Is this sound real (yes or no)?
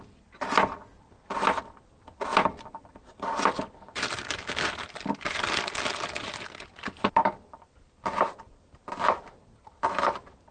yes